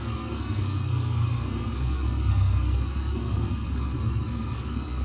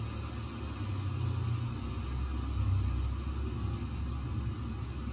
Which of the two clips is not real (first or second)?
first